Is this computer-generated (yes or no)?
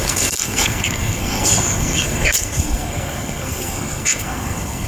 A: yes